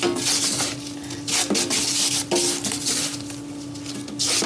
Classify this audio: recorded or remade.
recorded